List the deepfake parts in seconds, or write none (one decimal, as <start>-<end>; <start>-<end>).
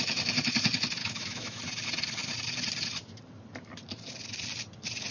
1.0-1.6